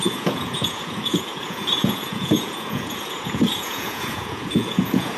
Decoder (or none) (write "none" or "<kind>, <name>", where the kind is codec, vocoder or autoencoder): vocoder, Vocos